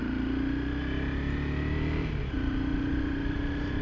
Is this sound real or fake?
real